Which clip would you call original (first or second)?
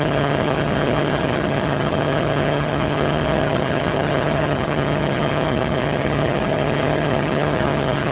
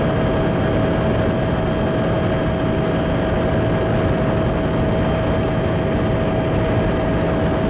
second